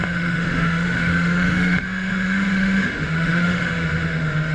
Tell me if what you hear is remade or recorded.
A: remade